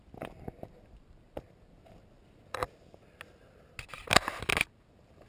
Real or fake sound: real